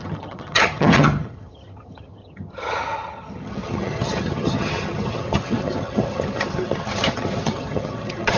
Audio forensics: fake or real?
fake